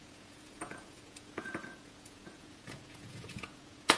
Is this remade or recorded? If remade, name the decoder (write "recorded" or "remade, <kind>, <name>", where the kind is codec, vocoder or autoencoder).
remade, vocoder, Vocos